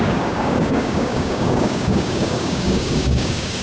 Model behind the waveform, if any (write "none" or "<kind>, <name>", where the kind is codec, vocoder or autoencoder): codec, DAC